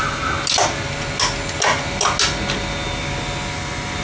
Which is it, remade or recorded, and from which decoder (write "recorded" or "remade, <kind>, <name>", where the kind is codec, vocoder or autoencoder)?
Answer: recorded